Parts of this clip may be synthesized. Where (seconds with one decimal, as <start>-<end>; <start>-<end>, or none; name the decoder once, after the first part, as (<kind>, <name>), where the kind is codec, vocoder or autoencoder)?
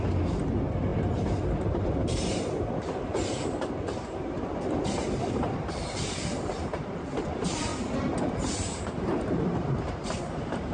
0.0-7.7 (vocoder, BigVGAN v2); 8.3-10.7